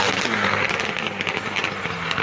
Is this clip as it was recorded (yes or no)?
yes